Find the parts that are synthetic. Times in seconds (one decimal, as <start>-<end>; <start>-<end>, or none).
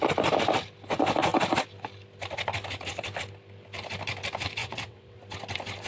4.6-5.2